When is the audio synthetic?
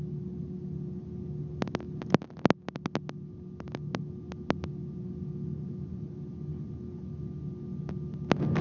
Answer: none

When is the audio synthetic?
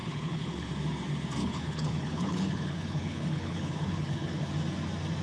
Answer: 0.0-0.7 (codec, HILCodec); 1.4-4.5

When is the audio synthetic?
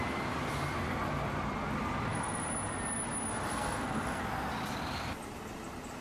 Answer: 3.5-4.2 (codec, SNAC)